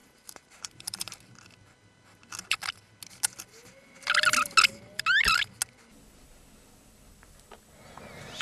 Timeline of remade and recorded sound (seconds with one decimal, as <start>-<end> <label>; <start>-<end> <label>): 0.0-1.1 remade; 1.1-8.4 recorded